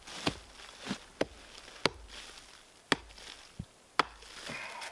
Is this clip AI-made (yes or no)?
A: no